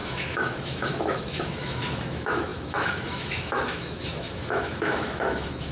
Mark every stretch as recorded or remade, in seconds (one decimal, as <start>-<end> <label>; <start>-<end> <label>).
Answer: 0.0-5.7 remade